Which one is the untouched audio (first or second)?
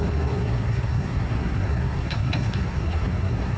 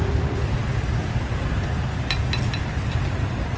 second